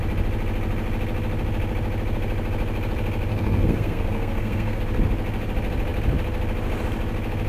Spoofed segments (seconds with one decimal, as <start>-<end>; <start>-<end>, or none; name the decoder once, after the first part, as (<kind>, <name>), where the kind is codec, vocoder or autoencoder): 3.3-4.8 (codec, SNAC)